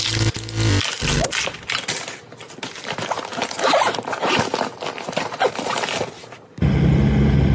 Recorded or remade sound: recorded